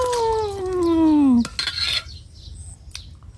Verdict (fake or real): real